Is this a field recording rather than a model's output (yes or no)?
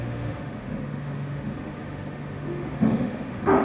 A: no